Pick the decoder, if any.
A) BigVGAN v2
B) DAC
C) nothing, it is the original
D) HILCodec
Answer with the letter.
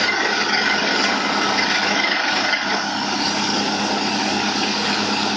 B